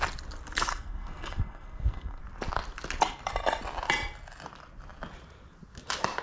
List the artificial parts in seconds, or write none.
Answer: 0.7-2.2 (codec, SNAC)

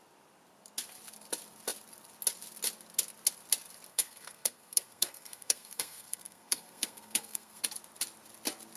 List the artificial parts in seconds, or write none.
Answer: 3.9-7.6 (codec, SNAC)